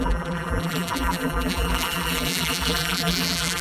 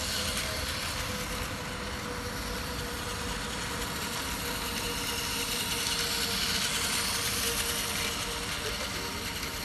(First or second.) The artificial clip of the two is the first